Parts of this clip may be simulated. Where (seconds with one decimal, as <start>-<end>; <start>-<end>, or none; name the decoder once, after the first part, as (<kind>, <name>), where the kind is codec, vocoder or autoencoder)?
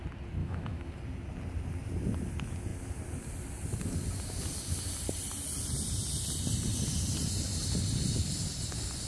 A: 0.4-0.9 (autoencoder, DAC-VAE)